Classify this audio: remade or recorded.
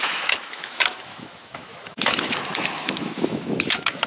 remade